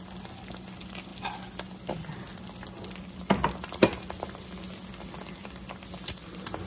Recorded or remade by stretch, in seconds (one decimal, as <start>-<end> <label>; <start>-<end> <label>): 0.0-6.7 recorded